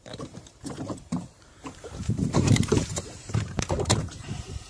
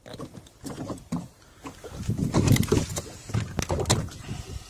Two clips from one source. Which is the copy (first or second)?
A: first